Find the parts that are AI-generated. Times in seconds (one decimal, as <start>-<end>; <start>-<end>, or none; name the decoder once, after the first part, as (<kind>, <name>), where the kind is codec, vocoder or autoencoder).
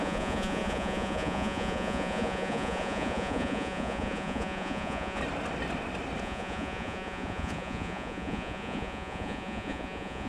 0.0-5.2 (vocoder, Vocos); 6.2-10.3